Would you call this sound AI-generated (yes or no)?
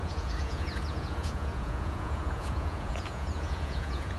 yes